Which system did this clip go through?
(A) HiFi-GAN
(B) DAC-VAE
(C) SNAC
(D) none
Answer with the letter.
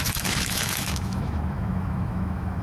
B